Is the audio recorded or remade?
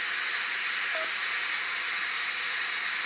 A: recorded